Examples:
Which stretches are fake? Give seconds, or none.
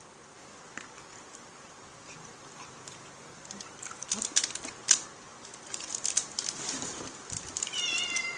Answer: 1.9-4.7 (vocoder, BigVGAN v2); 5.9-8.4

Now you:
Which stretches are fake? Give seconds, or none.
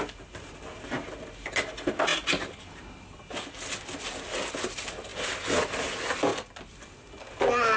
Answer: none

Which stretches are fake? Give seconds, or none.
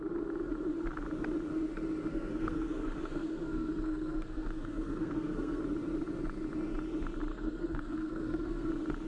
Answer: 2.1-5.6 (codec, SNAC); 7.3-8.7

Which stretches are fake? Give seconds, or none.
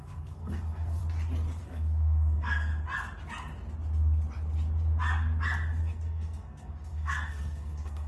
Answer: 0.0-1.0 (codec, SNAC); 1.6-2.7; 5.8-8.1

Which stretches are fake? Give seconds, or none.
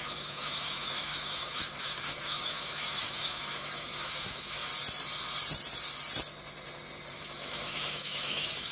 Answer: 0.0-4.7 (autoencoder, DAC-VAE); 7.1-8.7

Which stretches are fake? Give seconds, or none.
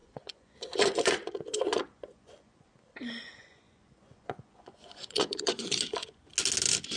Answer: 0.0-2.7 (vocoder, Vocos); 3.2-6.3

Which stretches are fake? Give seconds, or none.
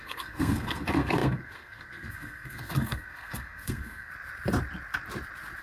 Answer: 0.0-4.1 (codec, SNAC)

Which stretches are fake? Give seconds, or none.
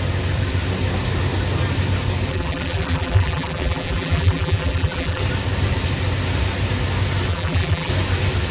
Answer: 2.3-5.2 (vocoder, BigVGAN v2); 7.3-7.9